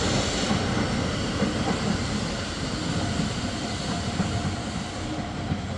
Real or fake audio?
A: real